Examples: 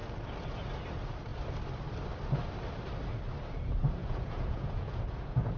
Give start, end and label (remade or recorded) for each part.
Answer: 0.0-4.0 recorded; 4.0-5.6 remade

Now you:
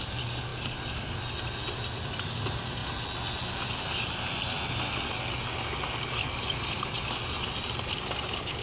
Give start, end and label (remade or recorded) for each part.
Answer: 0.0-8.6 recorded

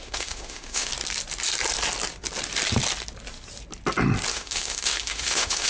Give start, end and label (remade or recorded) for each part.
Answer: 0.0-0.9 remade; 0.9-4.3 recorded; 4.3-5.7 remade

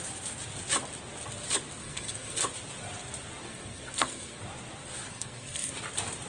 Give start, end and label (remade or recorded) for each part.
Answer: 0.0-1.8 recorded; 1.8-2.4 remade; 2.4-3.4 recorded; 3.4-4.4 remade; 4.4-5.1 recorded; 5.1-5.7 remade; 5.7-6.3 recorded

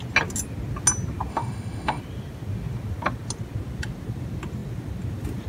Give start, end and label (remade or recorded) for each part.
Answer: 0.0-1.3 recorded; 1.3-2.0 remade; 2.0-5.5 recorded